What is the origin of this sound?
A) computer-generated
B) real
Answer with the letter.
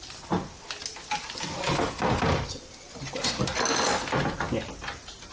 B